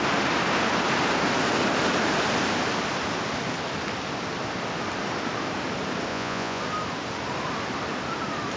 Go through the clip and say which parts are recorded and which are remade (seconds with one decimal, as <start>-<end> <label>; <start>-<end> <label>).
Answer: 0.0-6.1 recorded; 6.1-6.6 remade; 6.6-8.6 recorded